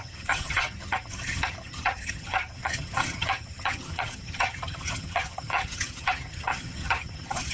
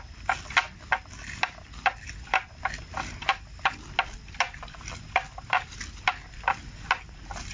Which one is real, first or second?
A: second